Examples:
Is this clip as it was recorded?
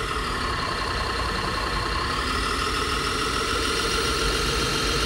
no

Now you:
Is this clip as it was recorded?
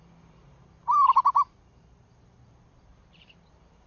no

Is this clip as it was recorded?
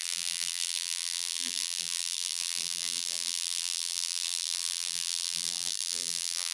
no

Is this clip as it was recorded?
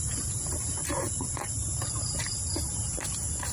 no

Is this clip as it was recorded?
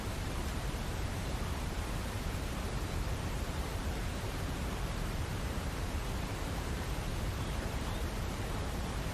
no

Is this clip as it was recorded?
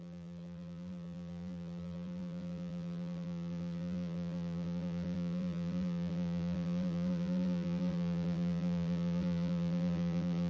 no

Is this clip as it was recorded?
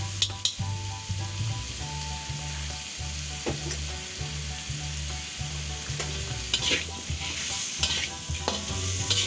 yes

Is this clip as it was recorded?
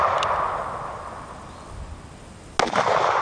yes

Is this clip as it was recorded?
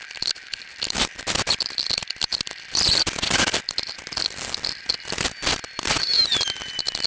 no